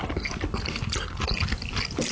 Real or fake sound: real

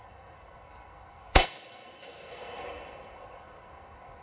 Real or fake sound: fake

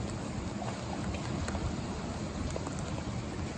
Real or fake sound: real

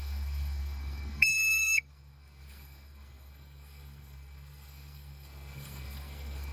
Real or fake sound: fake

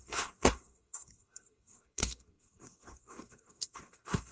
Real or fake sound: fake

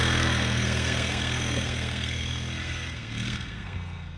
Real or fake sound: fake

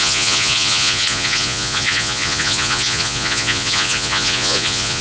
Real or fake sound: fake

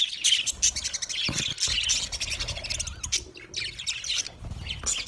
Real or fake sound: real